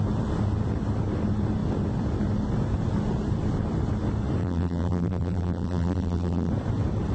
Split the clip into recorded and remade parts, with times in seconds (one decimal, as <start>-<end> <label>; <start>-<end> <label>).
0.0-4.4 recorded; 4.4-6.5 remade; 6.5-7.1 recorded